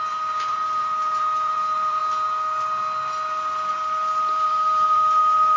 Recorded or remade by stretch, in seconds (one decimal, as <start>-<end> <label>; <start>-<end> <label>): 0.0-2.0 remade; 2.0-3.7 recorded; 3.7-5.6 remade